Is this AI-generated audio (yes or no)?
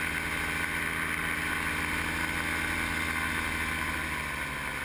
no